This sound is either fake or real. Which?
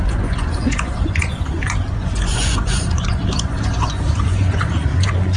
fake